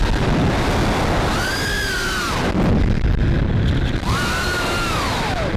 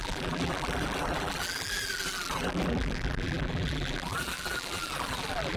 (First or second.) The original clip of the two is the first